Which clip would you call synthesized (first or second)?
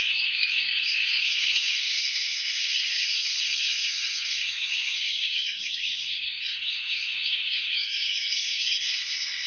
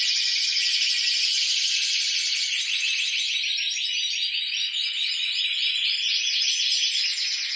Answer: first